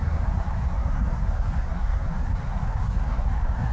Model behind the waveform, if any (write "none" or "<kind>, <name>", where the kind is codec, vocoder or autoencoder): codec, SNAC